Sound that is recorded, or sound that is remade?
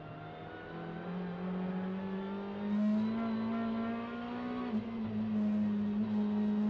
recorded